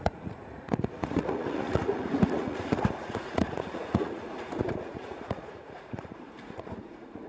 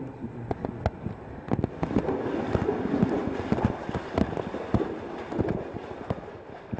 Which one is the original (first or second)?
second